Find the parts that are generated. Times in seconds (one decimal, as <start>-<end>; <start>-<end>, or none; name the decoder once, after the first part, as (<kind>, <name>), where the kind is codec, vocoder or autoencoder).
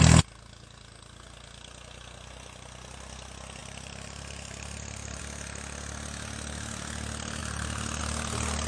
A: 3.6-5.2 (vocoder, BigVGAN v2); 7.4-8.0